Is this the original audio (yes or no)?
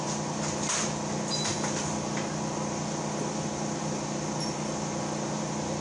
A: yes